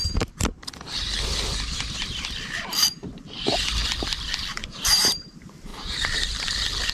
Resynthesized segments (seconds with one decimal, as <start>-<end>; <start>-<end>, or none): 0.0-3.8; 4.6-6.9